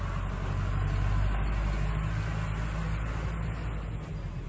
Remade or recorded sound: recorded